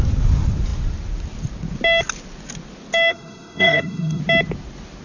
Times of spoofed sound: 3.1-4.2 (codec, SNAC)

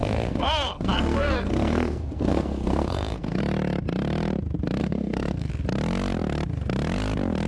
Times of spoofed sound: 0.0-3.4 (codec, SNAC); 4.8-5.5

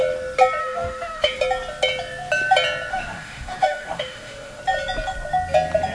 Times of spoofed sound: 0.6-1.4 (autoencoder, DAC-VAE); 2.9-4.6

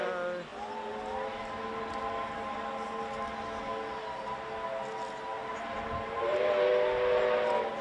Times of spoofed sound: 5.4-6.7 (vocoder, BigVGAN v2)

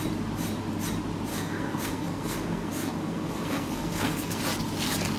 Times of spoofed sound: 1.3-4.4 (codec, SNAC)

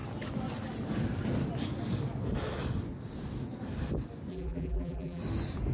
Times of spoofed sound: 4.3-5.2 (vocoder, BigVGAN v2)